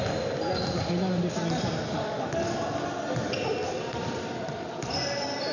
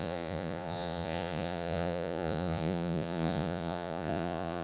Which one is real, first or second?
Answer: first